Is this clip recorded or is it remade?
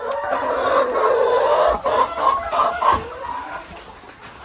recorded